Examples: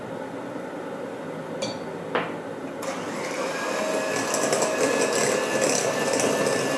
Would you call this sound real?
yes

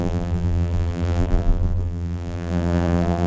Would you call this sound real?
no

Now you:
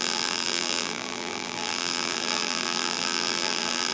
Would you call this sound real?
no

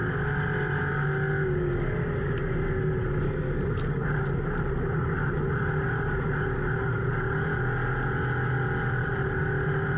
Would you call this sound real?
yes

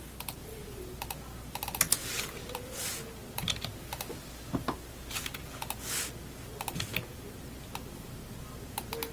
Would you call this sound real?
yes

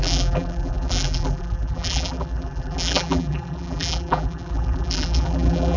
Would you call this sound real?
no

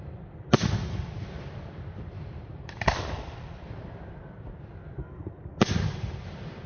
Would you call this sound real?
no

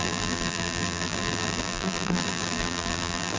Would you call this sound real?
no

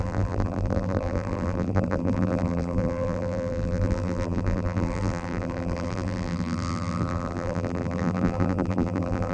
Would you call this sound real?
no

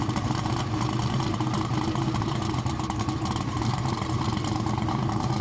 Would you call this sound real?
no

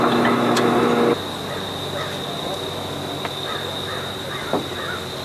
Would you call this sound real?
yes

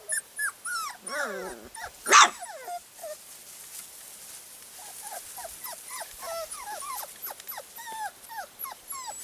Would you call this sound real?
yes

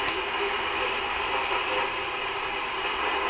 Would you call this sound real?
yes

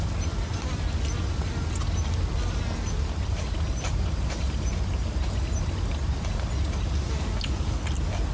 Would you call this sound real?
yes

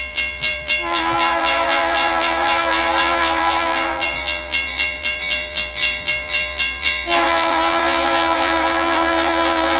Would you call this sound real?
no